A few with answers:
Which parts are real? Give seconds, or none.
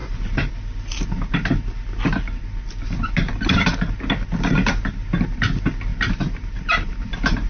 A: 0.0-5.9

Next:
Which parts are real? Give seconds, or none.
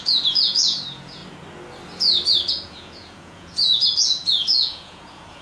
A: 1.2-2.5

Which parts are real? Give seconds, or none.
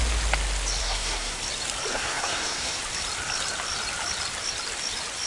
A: 0.0-0.8; 1.4-1.9; 2.8-5.3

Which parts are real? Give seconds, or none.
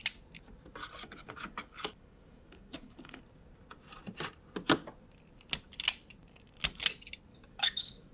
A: 0.0-0.8; 3.2-7.3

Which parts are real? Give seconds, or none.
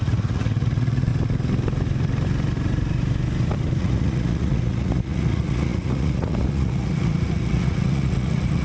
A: 1.1-3.8